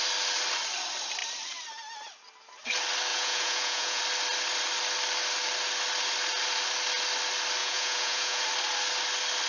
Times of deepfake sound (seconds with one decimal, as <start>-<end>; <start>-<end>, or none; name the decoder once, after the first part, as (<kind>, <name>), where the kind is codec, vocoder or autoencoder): 3.1-4.0 (vocoder, Vocos); 7.6-8.4